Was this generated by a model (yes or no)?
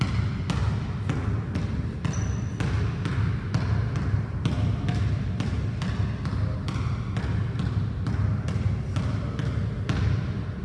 no